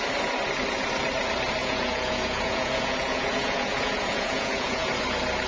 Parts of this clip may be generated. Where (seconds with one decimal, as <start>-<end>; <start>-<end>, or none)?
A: 1.6-4.9